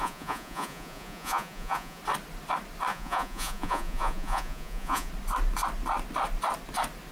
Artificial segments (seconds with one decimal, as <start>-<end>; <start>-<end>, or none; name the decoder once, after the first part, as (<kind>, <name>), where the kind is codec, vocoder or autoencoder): 0.0-2.0 (vocoder, Vocos); 2.9-5.1